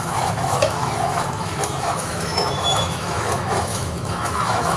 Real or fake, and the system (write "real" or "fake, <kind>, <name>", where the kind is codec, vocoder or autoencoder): fake, autoencoder, DAC-VAE